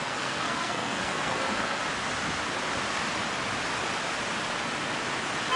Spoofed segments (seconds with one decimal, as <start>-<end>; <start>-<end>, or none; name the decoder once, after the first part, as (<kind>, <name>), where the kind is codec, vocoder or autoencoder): 0.0-1.8 (codec, SNAC)